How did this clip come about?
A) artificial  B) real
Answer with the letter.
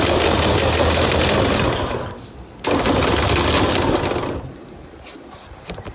B